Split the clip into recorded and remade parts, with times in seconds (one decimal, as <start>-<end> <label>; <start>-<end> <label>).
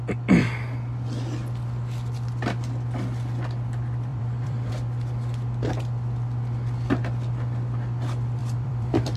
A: 0.0-4.1 recorded; 4.1-4.7 remade; 4.7-8.4 recorded; 8.4-9.2 remade